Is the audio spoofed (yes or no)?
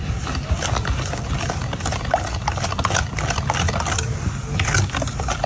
no